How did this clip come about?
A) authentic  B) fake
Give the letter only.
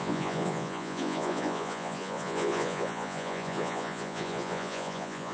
B